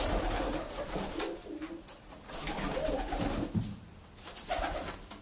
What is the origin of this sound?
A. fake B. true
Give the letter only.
B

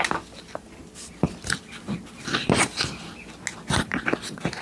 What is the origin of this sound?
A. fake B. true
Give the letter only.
B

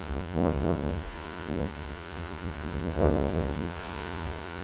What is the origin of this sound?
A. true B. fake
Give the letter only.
B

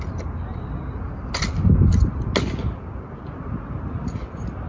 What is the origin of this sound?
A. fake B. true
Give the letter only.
B